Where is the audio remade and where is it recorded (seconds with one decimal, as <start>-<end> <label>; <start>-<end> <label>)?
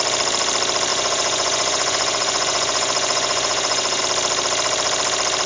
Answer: 0.0-0.9 recorded; 0.9-4.0 remade; 4.0-5.5 recorded